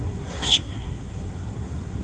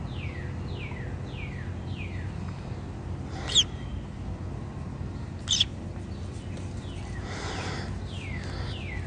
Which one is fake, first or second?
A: first